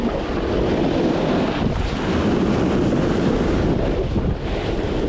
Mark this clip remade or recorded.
recorded